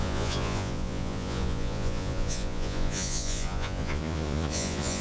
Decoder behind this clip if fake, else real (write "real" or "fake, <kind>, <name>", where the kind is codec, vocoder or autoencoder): fake, vocoder, Vocos